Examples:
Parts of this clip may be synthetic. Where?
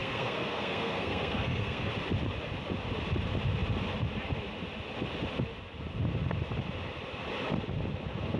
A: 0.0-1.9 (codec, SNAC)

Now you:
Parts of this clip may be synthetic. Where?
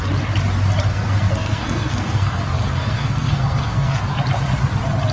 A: 0.9-4.0 (codec, SNAC)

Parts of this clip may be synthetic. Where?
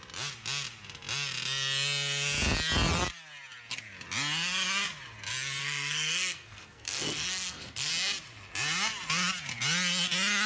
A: 5.6-7.9 (codec, SNAC)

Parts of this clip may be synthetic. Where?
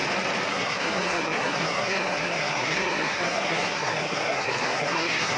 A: 0.5-5.4 (codec, SNAC)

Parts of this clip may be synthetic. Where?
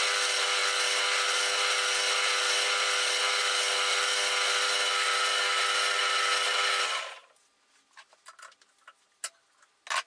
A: none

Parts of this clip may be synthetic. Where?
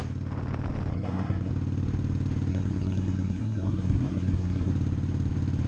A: 0.9-1.5 (codec, SNAC); 2.5-4.7